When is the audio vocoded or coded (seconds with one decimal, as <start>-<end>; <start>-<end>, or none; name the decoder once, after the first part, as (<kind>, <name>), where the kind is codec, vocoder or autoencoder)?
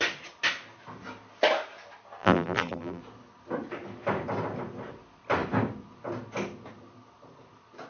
2.2-3.0 (vocoder, BigVGAN v2)